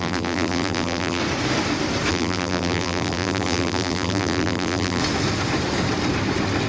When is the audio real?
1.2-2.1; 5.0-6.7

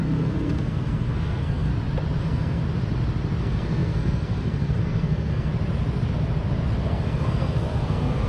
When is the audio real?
1.7-2.2; 2.6-3.4; 5.5-6.8

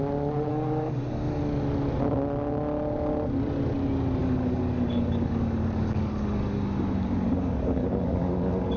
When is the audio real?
0.0-0.5; 1.4-4.2

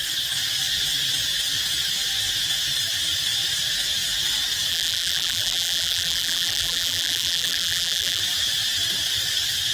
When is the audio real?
0.0-4.7; 8.2-9.7

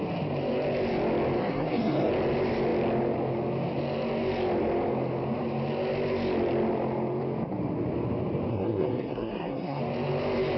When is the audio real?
0.0-1.4; 2.1-8.5; 9.8-10.6

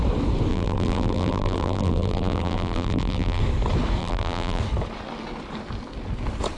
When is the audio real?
0.0-0.5; 3.4-4.0; 4.6-6.6